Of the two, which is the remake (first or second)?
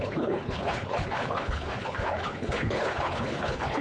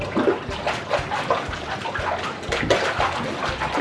first